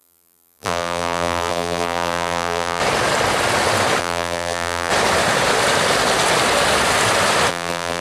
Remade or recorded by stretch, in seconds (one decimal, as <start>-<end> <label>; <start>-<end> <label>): 0.0-2.8 remade; 2.8-4.0 recorded; 4.0-4.9 remade; 4.9-7.5 recorded; 7.5-8.0 remade